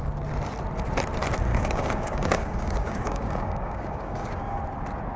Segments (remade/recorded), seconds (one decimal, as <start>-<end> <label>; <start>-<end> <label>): 0.0-1.5 recorded; 1.5-4.6 remade; 4.6-5.2 recorded